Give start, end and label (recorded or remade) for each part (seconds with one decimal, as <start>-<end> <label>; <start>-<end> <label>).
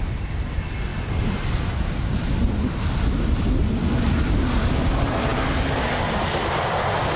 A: 0.0-7.2 recorded